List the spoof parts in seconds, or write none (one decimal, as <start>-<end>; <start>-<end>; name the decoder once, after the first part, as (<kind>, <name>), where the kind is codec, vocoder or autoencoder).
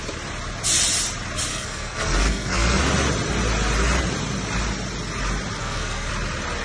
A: 1.5-2.8 (codec, SNAC); 5.6-6.1